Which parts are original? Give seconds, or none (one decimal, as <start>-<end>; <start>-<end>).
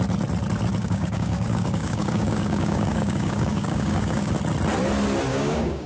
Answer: 0.0-0.8; 4.3-5.3